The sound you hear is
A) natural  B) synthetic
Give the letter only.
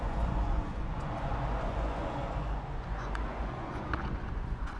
B